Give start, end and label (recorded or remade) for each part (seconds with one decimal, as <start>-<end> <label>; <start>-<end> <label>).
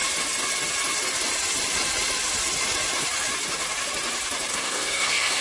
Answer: 0.0-4.5 recorded; 4.5-5.4 remade